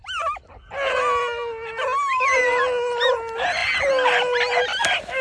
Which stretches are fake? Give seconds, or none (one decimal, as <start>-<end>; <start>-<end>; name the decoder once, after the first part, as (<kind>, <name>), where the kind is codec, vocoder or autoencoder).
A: none